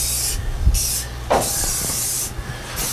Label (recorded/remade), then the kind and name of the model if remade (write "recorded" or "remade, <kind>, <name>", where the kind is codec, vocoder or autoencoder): recorded